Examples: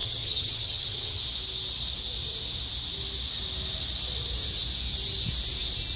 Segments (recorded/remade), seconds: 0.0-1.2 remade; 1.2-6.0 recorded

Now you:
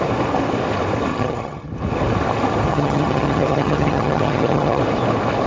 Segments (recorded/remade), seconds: 0.0-1.1 recorded; 1.1-1.7 remade; 1.7-2.7 recorded; 2.7-4.8 remade; 4.8-5.5 recorded